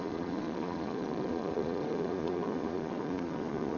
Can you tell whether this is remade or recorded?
remade